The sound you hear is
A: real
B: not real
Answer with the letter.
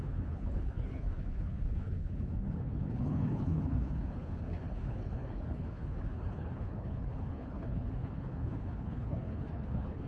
B